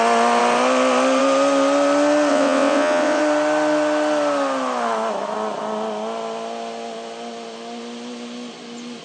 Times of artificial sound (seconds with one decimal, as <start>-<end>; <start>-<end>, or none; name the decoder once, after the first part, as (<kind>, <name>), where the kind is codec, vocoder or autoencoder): 2.3-3.2 (vocoder, WaveNeXt)